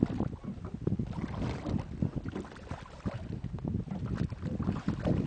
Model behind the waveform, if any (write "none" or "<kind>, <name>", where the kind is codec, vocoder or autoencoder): none